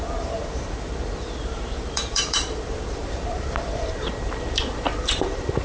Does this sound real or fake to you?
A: fake